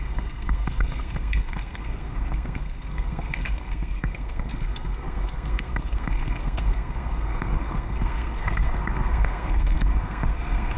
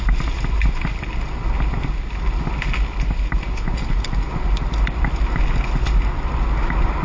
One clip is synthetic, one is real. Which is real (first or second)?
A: second